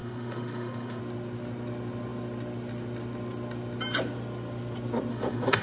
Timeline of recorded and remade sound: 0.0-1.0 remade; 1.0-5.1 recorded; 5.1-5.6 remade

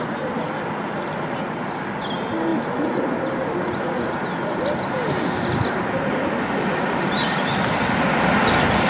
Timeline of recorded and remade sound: 0.0-8.9 recorded

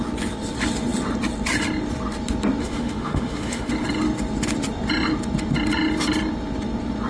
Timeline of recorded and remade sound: 0.0-2.6 recorded; 2.6-3.7 remade; 3.7-7.1 recorded

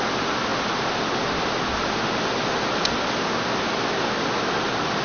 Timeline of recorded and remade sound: 0.0-5.0 recorded

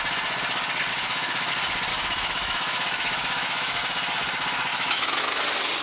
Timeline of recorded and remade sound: 0.0-0.9 recorded; 0.9-1.5 remade; 1.5-1.9 recorded; 1.9-3.8 remade; 3.8-4.7 recorded; 4.7-5.2 remade; 5.2-5.8 recorded

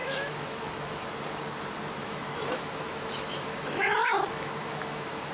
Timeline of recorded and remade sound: 0.0-1.1 remade; 1.1-2.0 recorded; 2.0-5.3 remade